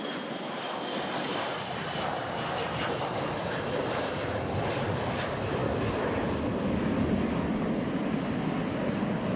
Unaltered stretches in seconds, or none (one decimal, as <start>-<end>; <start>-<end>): 0.0-9.4